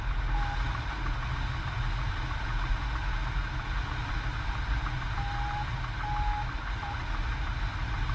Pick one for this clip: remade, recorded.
recorded